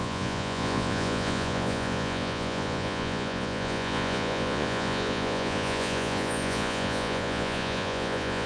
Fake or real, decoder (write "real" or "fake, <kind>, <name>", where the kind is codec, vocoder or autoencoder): fake, vocoder, Vocos